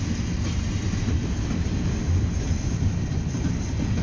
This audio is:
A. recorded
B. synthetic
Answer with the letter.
A